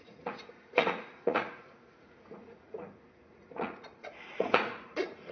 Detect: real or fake fake